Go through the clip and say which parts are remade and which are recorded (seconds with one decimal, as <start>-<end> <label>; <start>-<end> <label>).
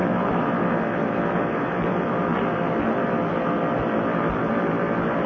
0.0-5.3 recorded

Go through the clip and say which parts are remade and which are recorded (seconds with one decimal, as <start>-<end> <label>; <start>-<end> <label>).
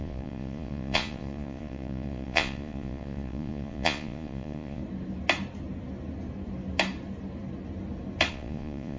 0.0-4.8 remade; 4.8-8.3 recorded; 8.3-9.0 remade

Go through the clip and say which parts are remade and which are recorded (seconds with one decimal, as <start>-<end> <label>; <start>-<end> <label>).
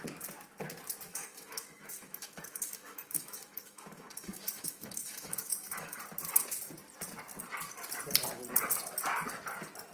0.0-1.1 recorded; 1.1-6.0 remade; 6.0-9.9 recorded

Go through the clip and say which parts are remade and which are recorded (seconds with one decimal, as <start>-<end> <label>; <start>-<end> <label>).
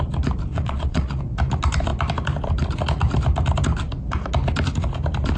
0.0-0.5 recorded; 0.5-1.2 remade; 1.2-5.4 recorded